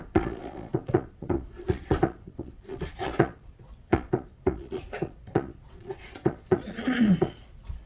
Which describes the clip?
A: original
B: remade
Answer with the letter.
B